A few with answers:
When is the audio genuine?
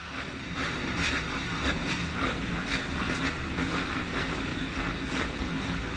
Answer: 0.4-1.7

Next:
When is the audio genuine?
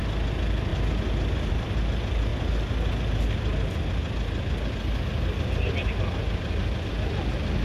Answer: 0.0-7.6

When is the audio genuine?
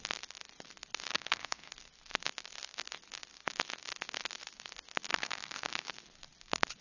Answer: 0.0-1.1; 1.7-5.1; 5.9-6.8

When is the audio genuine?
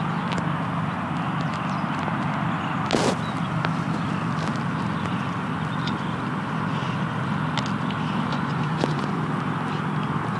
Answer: 0.0-8.3; 9.2-10.4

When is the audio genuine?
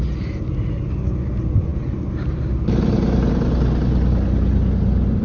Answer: 0.0-5.2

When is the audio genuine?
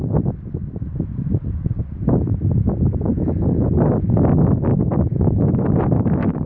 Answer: 0.0-0.6; 1.8-6.5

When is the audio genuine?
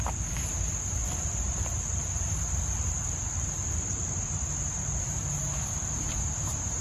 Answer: 1.0-5.0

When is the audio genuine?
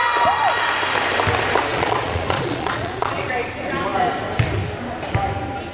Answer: 0.0-1.7; 3.3-5.7